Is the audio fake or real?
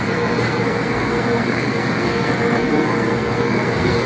fake